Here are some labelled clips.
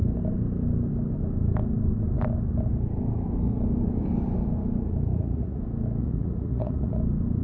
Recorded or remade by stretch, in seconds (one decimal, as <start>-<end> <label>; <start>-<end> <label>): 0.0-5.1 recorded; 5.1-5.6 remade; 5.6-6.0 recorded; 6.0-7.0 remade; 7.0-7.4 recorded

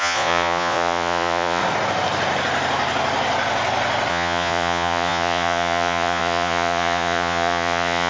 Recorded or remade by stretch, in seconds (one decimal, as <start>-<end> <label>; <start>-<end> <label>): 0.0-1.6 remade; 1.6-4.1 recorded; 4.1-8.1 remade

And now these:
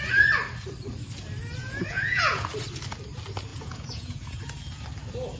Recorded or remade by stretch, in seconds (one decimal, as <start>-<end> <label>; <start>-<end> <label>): 0.0-1.6 recorded; 1.6-2.5 remade; 2.5-3.5 recorded; 3.5-4.4 remade; 4.4-5.4 recorded

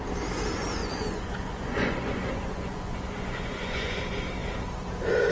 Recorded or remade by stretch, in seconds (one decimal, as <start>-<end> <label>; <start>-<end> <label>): 0.0-0.8 recorded; 0.8-4.0 remade; 4.0-5.3 recorded